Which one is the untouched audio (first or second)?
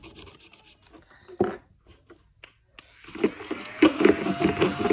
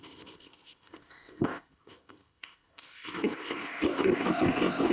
first